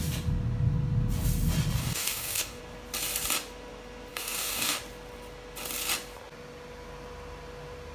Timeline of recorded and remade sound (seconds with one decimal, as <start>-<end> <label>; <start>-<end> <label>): 0.0-1.8 recorded; 1.8-2.6 remade; 2.6-4.1 recorded; 4.1-4.8 remade; 4.8-7.9 recorded